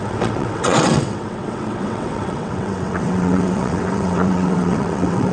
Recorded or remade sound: remade